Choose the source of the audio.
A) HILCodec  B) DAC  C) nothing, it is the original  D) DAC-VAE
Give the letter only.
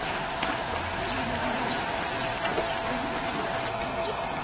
C